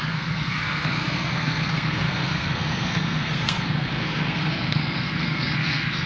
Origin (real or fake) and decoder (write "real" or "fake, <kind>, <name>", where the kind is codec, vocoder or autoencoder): fake, codec, SNAC